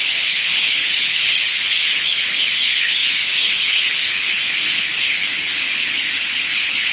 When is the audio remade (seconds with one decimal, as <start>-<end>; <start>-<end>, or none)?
0.0-6.9